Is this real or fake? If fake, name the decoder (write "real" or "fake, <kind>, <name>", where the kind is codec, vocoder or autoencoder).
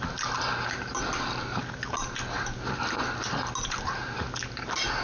real